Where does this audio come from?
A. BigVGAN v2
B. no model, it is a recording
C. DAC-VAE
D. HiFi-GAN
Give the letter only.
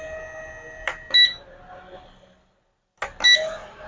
B